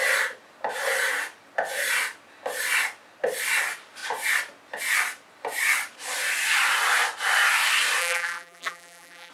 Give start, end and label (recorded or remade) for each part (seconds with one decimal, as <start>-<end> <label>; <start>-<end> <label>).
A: 0.0-8.0 recorded; 8.0-9.3 remade